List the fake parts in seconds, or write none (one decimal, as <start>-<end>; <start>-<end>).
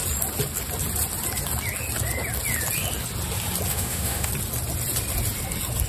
3.7-4.3